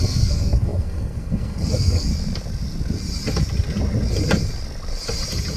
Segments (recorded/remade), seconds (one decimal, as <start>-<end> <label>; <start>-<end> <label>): 0.0-2.1 remade; 2.1-5.6 recorded